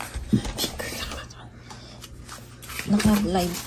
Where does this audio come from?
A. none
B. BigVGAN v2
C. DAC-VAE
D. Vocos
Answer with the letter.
A